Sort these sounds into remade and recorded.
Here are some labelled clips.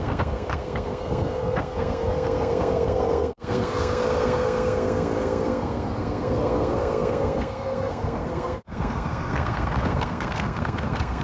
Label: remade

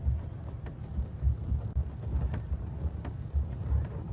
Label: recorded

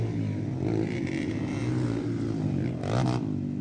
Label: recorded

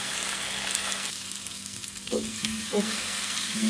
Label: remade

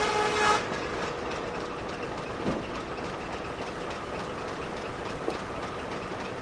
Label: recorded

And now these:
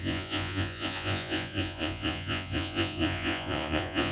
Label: remade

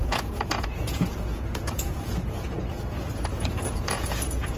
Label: remade